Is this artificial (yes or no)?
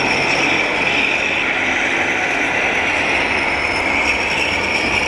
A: no